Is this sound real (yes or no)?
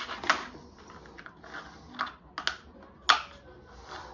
yes